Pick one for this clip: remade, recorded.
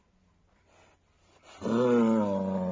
recorded